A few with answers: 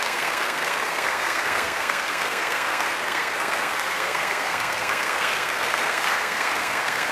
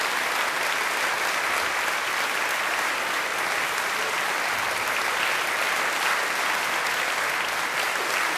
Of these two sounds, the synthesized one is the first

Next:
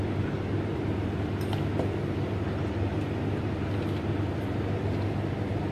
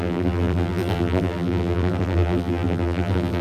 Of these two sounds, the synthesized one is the second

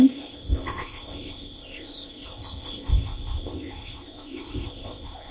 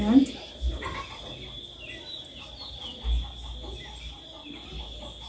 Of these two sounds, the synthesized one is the first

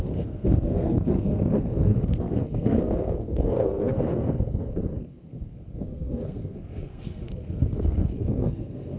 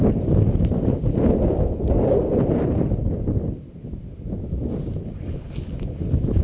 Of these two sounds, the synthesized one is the first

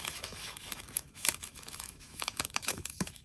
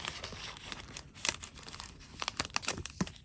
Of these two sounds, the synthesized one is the first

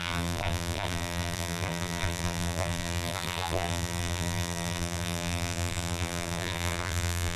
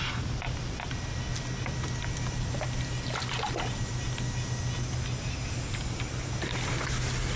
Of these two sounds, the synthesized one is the first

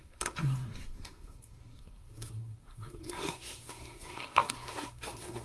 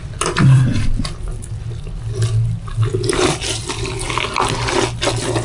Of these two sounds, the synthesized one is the first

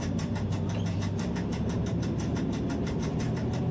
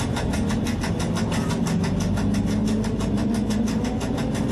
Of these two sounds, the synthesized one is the first